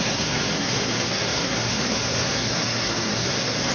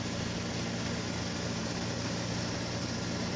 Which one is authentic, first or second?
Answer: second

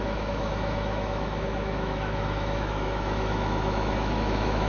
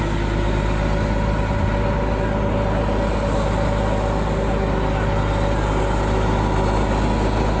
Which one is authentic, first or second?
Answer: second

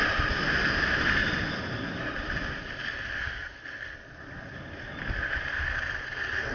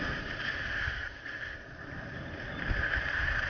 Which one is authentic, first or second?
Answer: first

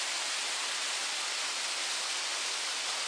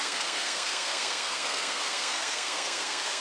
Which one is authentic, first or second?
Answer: first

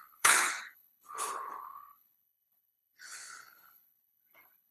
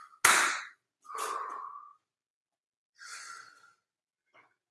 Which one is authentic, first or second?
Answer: second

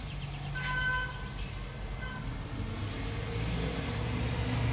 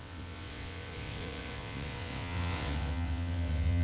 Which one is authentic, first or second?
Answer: first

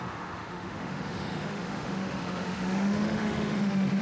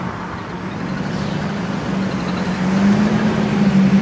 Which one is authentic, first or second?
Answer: second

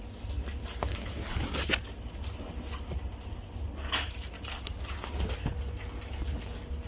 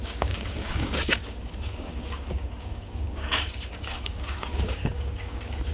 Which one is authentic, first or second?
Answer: first